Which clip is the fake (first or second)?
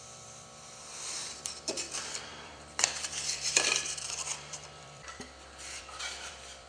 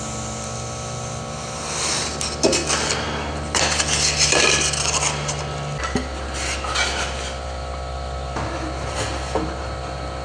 first